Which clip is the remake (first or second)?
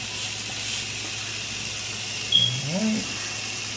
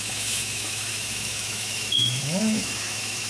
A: second